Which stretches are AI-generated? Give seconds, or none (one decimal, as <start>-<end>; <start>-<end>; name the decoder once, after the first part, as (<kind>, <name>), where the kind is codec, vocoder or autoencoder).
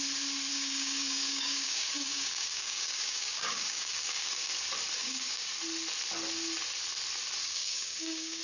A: 0.5-4.5 (codec, DAC); 5.0-5.5; 7.4-8.4